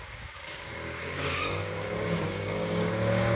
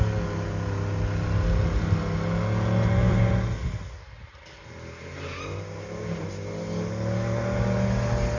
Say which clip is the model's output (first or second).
first